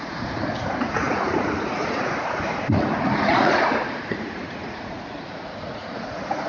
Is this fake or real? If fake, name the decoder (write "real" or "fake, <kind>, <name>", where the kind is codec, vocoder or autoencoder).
fake, vocoder, Vocos